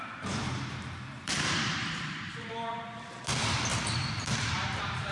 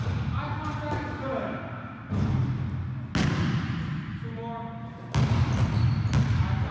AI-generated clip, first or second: first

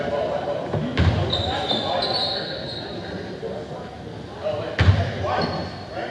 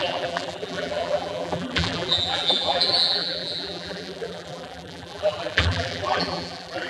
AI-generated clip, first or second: second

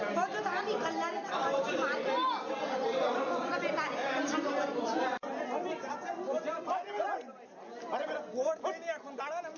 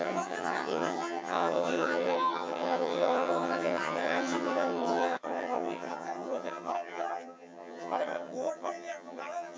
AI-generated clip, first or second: second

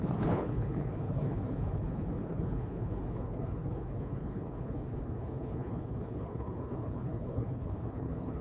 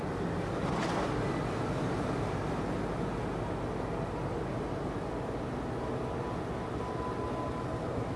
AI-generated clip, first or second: first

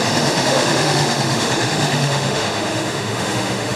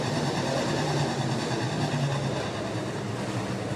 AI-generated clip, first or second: first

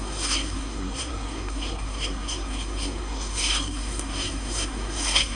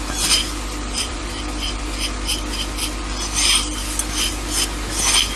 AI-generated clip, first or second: first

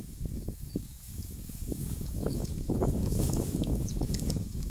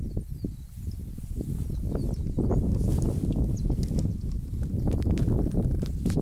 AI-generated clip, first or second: first